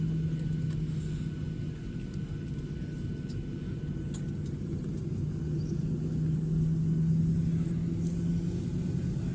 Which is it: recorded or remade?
recorded